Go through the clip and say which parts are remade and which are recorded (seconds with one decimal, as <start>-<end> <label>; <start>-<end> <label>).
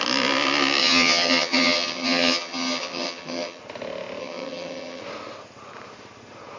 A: 0.0-0.8 recorded; 0.8-3.6 remade; 3.6-4.2 recorded; 4.2-5.0 remade; 5.0-6.6 recorded